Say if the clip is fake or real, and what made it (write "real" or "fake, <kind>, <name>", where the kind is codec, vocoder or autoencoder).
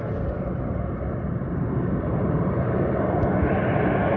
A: real